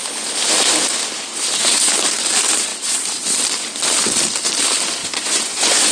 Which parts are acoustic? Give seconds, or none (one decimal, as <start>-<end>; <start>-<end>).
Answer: 0.0-5.0